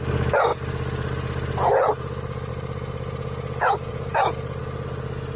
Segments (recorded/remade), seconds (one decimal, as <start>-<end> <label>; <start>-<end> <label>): 0.0-3.9 recorded; 3.9-4.6 remade; 4.6-5.4 recorded